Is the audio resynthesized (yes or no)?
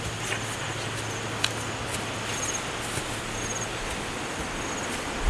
no